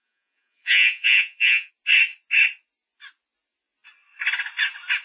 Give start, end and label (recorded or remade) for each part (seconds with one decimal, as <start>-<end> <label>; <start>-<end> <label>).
0.0-1.7 remade; 1.7-5.0 recorded